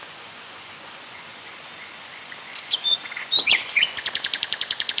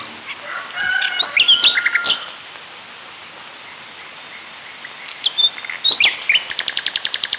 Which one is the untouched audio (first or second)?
second